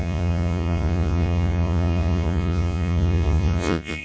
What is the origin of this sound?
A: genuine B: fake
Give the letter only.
B